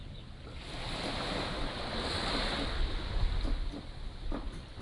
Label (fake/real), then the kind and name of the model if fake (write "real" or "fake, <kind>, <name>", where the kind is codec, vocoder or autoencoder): real